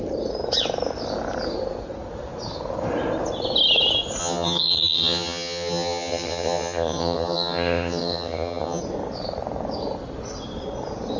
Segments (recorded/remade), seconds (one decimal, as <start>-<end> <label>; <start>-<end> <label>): 0.0-4.2 recorded; 4.2-8.8 remade; 8.8-11.2 recorded